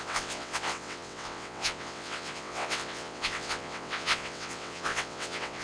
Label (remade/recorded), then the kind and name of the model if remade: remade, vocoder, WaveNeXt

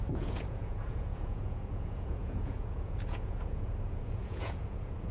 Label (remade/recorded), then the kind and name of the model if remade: remade, vocoder, Vocos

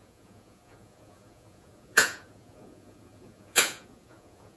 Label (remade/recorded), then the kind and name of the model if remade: remade, vocoder, Vocos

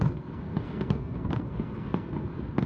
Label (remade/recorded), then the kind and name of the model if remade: remade, codec, SNAC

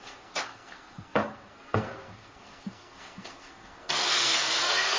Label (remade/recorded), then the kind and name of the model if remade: remade, codec, SNAC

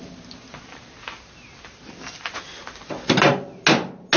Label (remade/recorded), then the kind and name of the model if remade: recorded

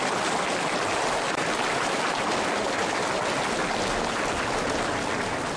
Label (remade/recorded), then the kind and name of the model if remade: recorded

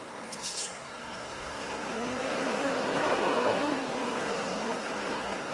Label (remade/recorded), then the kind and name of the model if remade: remade, codec, SNAC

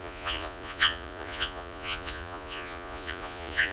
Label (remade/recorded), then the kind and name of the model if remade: remade, vocoder, Vocos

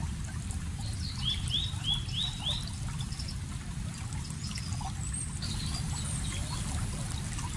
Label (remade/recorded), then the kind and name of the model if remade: recorded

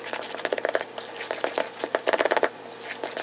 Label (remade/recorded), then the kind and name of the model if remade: recorded